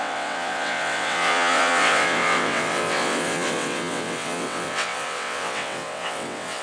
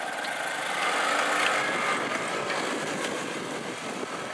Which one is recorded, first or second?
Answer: second